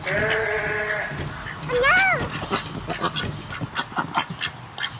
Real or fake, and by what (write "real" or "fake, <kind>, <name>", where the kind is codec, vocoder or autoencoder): real